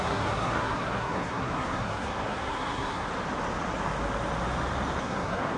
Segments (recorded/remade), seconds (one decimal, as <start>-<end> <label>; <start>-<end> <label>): 0.0-3.1 remade; 3.1-5.0 recorded; 5.0-5.6 remade